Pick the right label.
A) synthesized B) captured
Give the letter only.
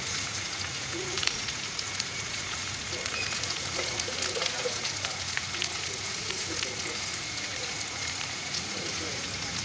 A